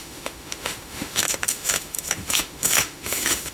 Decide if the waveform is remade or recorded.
remade